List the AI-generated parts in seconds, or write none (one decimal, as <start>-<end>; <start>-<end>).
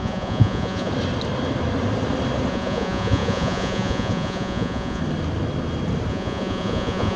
0.0-0.9; 2.5-5.0; 6.1-7.2